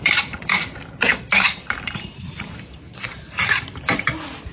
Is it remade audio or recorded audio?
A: remade